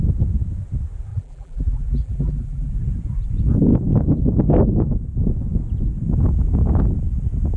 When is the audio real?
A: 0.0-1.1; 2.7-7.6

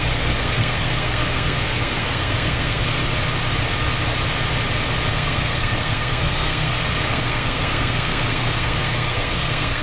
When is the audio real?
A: 3.0-5.1

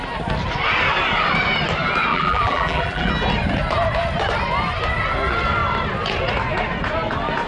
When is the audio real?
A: 0.0-2.1; 3.1-7.5

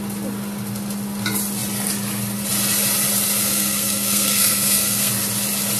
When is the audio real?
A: 0.0-3.4; 5.1-5.8

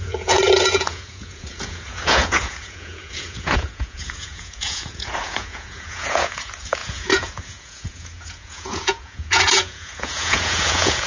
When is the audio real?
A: none

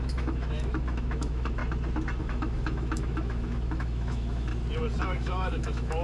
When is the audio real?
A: 1.6-2.2; 4.5-5.0

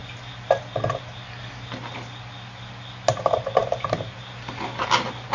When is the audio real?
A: 0.0-5.3